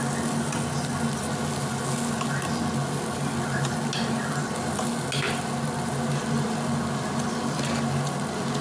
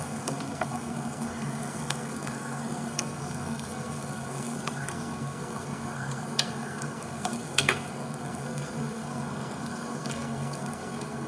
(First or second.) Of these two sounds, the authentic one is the first